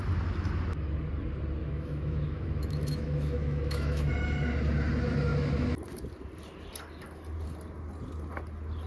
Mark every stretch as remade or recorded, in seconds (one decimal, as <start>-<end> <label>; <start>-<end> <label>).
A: 0.0-1.6 recorded; 1.6-4.1 remade; 4.1-8.9 recorded